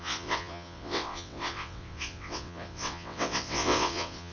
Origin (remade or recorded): remade